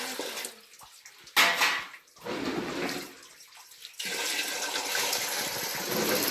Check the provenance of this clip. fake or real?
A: real